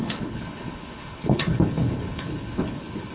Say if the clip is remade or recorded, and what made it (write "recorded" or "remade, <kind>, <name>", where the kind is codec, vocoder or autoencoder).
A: remade, codec, HILCodec